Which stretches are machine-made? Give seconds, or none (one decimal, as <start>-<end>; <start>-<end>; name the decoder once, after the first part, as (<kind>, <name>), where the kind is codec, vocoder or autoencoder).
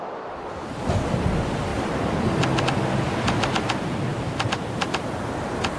none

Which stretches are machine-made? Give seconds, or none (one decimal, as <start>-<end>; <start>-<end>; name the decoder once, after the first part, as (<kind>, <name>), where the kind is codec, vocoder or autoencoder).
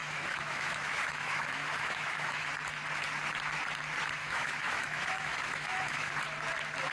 0.0-2.5 (autoencoder, DAC-VAE); 4.2-6.1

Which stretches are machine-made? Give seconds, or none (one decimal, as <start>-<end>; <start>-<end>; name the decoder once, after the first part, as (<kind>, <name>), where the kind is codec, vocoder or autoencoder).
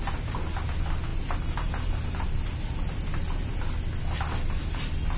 none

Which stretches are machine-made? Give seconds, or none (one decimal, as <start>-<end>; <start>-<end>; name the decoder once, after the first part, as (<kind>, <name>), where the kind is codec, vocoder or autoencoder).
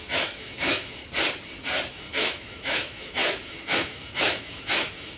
0.0-1.0 (autoencoder, DAC-VAE); 1.9-5.2